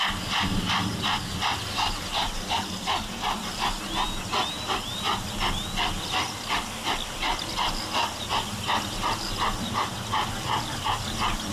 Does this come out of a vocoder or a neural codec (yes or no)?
no